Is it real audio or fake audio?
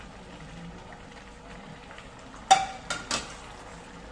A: real